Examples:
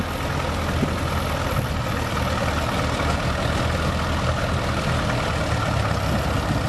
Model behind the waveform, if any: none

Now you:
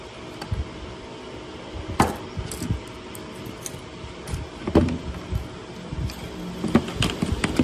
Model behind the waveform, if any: none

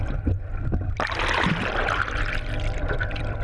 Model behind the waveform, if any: vocoder, BigVGAN v2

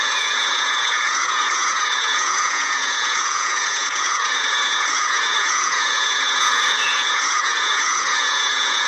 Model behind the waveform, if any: vocoder, Vocos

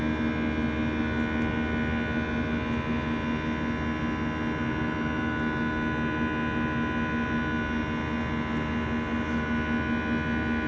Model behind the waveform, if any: none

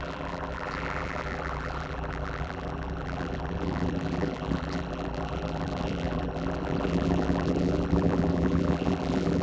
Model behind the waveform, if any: vocoder, BigVGAN v2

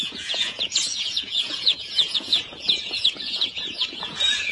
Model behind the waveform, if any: vocoder, Vocos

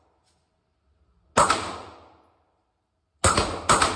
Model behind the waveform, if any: none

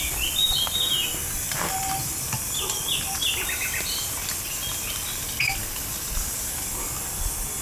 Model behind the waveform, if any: vocoder, BigVGAN v2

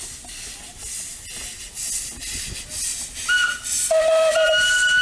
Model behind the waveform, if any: none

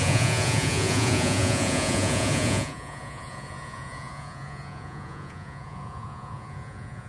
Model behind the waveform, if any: vocoder, Vocos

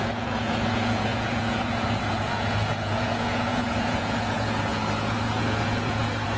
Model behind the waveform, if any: vocoder, Vocos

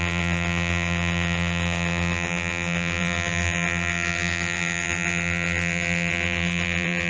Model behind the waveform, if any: vocoder, BigVGAN v2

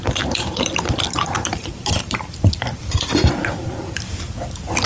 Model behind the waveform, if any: vocoder, BigVGAN v2